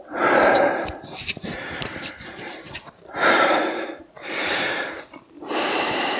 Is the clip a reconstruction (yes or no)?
yes